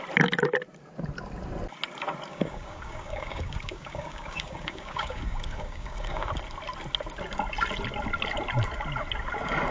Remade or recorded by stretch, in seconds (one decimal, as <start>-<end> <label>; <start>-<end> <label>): 0.0-2.3 recorded; 2.3-6.3 remade; 6.3-9.7 recorded